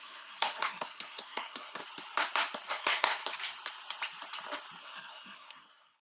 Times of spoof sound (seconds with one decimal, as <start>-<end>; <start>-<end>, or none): 0.0-1.8; 2.7-3.2; 4.8-6.0